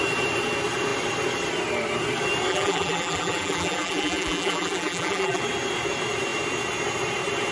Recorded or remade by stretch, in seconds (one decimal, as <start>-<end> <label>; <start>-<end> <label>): 0.0-2.5 recorded; 2.5-5.4 remade; 5.4-7.5 recorded